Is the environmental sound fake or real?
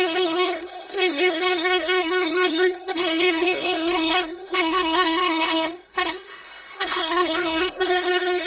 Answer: fake